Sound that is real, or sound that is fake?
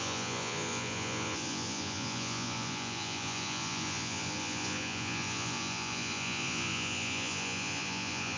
fake